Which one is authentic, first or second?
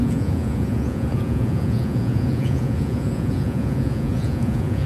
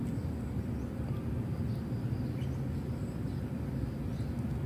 second